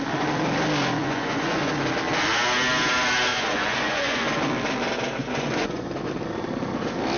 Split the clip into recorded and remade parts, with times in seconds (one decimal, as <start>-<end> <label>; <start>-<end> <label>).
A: 0.0-1.0 recorded; 1.0-1.7 remade; 1.7-3.3 recorded; 3.3-4.2 remade; 4.2-5.2 recorded; 5.2-6.1 remade; 6.1-7.2 recorded